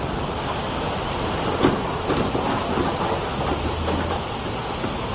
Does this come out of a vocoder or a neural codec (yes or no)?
no